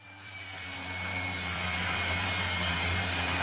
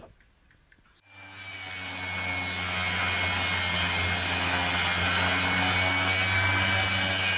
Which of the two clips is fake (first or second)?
first